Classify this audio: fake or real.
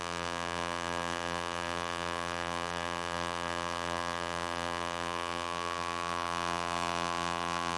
fake